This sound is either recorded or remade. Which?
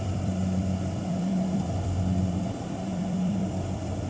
remade